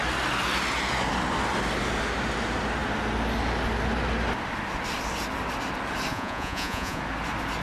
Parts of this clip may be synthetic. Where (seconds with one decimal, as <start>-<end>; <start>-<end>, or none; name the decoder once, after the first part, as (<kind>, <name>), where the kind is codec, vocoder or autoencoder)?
6.1-7.0 (vocoder, Vocos)